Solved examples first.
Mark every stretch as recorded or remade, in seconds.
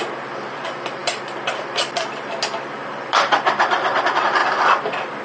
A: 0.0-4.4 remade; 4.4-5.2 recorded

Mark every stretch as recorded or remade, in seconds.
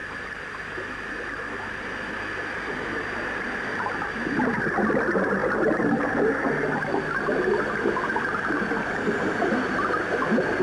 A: 0.0-10.6 recorded